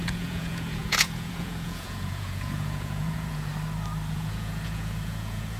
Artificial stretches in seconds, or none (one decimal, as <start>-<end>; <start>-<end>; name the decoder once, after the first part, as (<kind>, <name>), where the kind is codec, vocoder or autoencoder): 0.0-3.5 (vocoder, Vocos); 4.1-5.6